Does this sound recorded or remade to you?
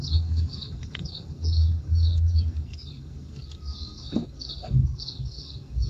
remade